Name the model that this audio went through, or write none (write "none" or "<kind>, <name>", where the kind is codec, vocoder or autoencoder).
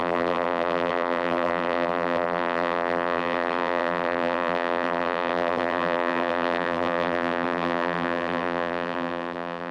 vocoder, BigVGAN v2